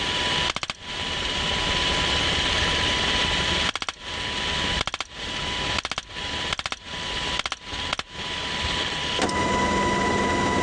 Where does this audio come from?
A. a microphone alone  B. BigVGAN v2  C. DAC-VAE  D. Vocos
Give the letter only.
A